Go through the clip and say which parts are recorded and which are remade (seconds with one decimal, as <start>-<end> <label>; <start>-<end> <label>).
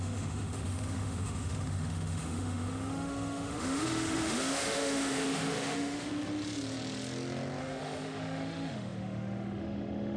0.0-6.1 remade; 6.1-7.6 recorded; 7.6-10.2 remade